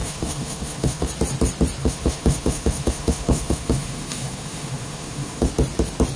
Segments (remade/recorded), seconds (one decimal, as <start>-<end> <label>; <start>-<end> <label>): 0.0-1.1 remade; 1.1-1.8 recorded; 1.8-5.5 remade; 5.5-6.2 recorded